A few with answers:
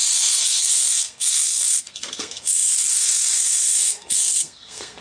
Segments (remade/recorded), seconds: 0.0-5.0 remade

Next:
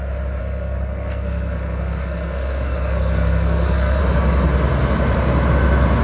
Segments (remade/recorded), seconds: 0.0-0.4 recorded; 0.4-4.0 remade; 4.0-6.0 recorded

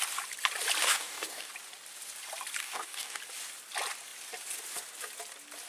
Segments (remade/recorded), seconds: 0.0-0.8 recorded; 0.8-1.5 remade; 1.5-2.6 recorded; 2.6-3.2 remade; 3.2-5.7 recorded

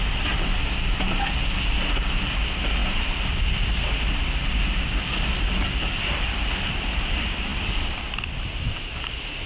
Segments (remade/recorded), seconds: 0.0-9.5 recorded

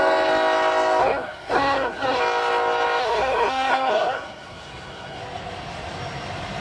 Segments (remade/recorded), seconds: 0.0-1.0 recorded; 1.0-2.2 remade; 2.2-3.0 recorded; 3.0-5.2 remade; 5.2-6.6 recorded

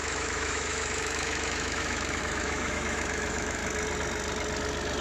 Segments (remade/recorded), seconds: 0.0-3.6 remade; 3.6-5.0 recorded